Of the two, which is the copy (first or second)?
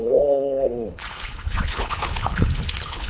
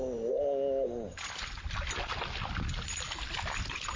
first